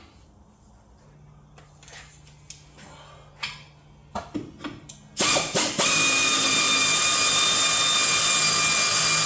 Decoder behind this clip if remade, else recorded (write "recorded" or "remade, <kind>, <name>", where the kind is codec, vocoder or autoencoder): recorded